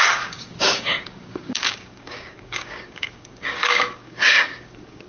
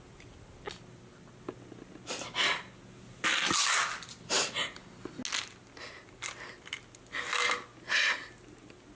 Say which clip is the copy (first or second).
first